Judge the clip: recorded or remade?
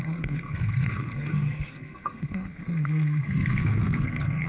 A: remade